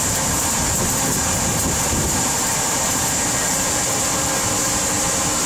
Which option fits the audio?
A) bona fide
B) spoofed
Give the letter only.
A